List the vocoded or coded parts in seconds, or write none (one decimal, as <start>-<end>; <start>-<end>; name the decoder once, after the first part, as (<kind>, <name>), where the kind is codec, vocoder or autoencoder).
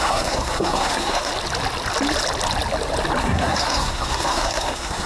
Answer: 0.0-1.3 (codec, SNAC); 3.2-5.1